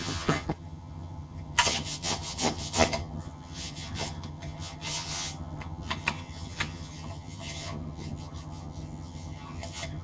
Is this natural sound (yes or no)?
no